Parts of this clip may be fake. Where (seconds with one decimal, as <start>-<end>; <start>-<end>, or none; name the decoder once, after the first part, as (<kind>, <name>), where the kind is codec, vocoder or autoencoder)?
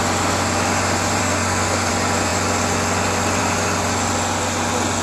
1.2-1.9 (codec, SNAC)